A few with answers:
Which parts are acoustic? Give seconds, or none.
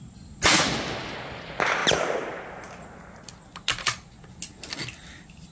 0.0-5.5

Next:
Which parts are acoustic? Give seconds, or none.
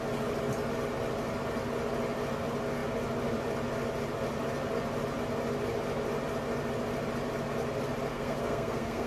0.0-8.1